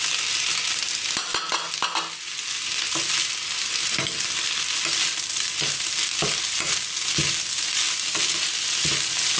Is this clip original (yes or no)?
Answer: yes